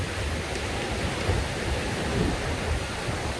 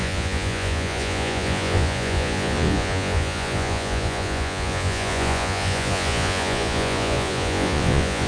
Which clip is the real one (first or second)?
first